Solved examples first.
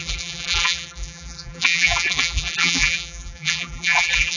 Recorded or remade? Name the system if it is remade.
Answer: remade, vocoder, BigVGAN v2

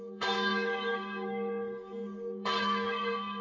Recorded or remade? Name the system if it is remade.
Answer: remade, codec, SNAC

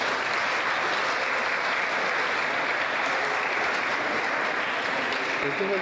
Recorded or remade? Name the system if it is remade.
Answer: recorded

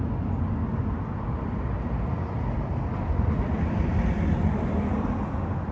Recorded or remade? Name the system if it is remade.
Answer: recorded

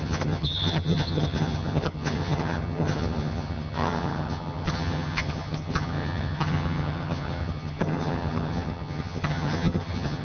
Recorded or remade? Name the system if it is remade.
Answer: remade, vocoder, HiFi-GAN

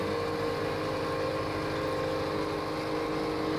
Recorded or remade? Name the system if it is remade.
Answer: recorded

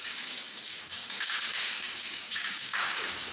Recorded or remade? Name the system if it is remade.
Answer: remade, codec, DAC